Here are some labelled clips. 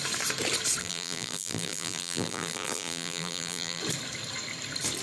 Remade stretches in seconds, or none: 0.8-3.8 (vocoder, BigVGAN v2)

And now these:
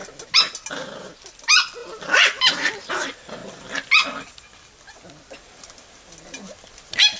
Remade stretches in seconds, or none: 0.7-3.4 (vocoder, BigVGAN v2); 6.6-7.2

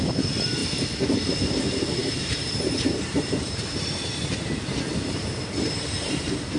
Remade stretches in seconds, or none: 2.0-4.0 (vocoder, BigVGAN v2)

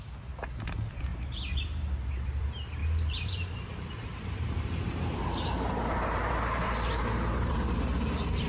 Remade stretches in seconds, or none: 2.8-7.5 (vocoder, BigVGAN v2)

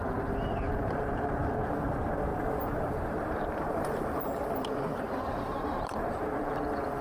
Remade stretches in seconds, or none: 2.3-6.5 (vocoder, BigVGAN v2)

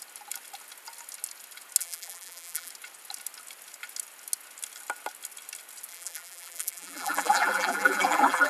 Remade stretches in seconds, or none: 1.8-2.7 (vocoder, BigVGAN v2); 5.9-8.5

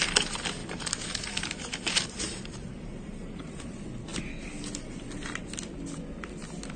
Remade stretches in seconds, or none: 0.6-3.6 (vocoder, BigVGAN v2)

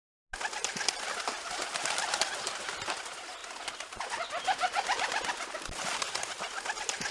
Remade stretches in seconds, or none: none